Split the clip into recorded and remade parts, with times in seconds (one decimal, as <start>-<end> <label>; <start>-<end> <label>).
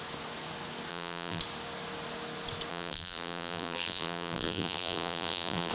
0.0-0.9 recorded; 0.9-1.4 remade; 1.4-2.7 recorded; 2.7-5.7 remade